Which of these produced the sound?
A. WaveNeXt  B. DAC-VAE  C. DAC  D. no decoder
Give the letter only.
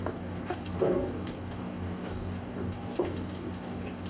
C